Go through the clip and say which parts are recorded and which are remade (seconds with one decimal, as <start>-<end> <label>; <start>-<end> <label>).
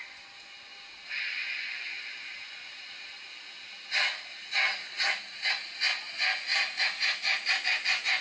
0.0-0.7 remade; 0.7-1.2 recorded; 1.2-2.7 remade; 2.7-6.0 recorded; 6.0-6.5 remade; 6.5-7.5 recorded; 7.5-8.2 remade